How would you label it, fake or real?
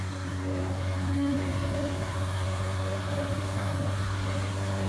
fake